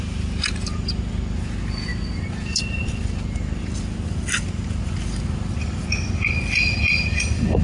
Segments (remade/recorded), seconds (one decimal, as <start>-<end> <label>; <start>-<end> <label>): 0.0-7.6 recorded